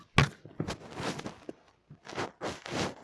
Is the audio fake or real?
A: real